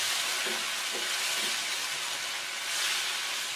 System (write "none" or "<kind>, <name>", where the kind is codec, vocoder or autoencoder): none